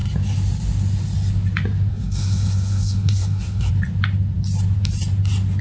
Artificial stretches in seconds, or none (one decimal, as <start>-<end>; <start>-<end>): 1.9-3.7